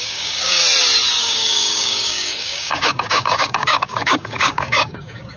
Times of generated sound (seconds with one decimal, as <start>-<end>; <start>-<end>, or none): 0.0-0.6; 1.2-5.4